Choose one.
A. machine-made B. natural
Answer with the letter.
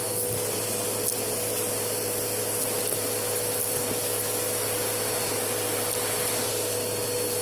B